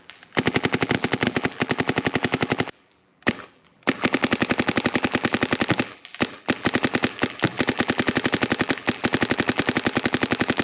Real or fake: fake